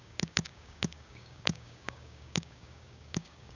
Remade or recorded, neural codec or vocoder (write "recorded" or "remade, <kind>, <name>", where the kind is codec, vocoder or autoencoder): remade, codec, DAC